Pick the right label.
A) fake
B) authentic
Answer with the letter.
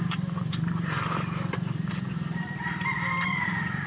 A